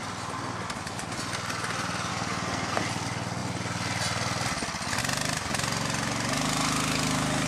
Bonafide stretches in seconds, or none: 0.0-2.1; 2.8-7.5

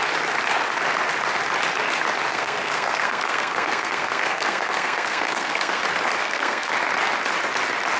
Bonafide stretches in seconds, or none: 0.0-2.3; 5.8-6.2; 6.7-8.0

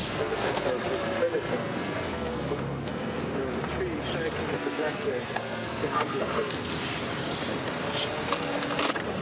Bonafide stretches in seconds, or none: 0.7-1.2; 3.4-4.5; 6.7-9.2